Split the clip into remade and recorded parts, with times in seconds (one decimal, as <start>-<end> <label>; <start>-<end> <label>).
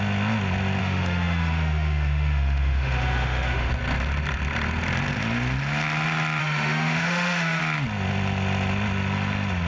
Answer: 0.0-0.8 recorded; 0.8-3.7 remade; 3.7-6.4 recorded; 6.4-7.6 remade; 7.6-9.7 recorded